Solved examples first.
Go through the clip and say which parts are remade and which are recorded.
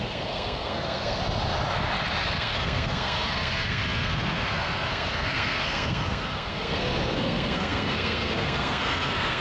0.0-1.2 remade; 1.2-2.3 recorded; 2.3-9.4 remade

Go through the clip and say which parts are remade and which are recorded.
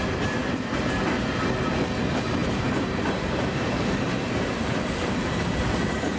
0.0-2.4 recorded; 2.4-5.4 remade; 5.4-6.2 recorded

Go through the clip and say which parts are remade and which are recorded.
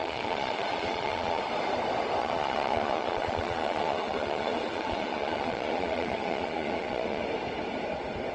0.0-1.4 remade; 1.4-2.2 recorded; 2.2-7.2 remade; 7.2-8.3 recorded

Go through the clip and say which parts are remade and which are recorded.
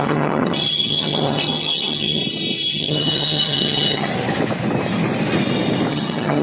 0.0-2.2 remade; 2.2-2.7 recorded; 2.7-4.1 remade; 4.1-5.9 recorded; 5.9-6.4 remade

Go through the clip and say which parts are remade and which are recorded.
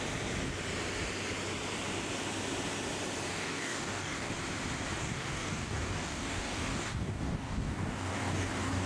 0.0-3.3 recorded; 3.3-4.3 remade; 4.3-5.0 recorded; 5.0-8.9 remade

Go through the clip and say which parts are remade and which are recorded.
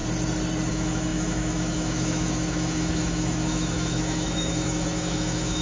0.0-0.7 recorded; 0.7-5.6 remade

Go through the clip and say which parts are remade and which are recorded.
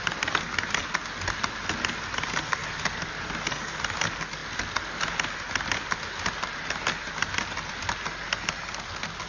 0.0-9.3 recorded